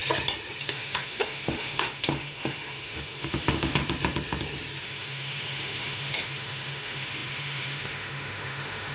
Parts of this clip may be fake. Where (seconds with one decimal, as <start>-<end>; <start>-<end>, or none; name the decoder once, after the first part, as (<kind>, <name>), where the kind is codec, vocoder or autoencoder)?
0.6-3.8 (autoencoder, DAC-VAE); 4.8-8.9